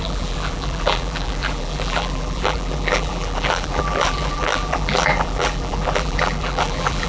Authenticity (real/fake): fake